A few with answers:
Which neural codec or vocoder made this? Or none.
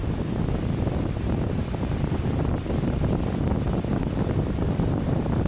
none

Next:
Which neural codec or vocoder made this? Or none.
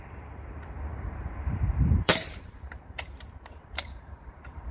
vocoder, BigVGAN v2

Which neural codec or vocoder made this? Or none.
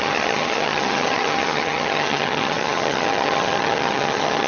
vocoder, HiFi-GAN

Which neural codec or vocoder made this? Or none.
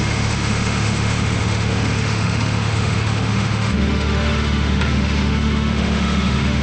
autoencoder, DAC-VAE